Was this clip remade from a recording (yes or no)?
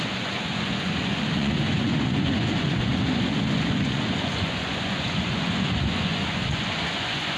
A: yes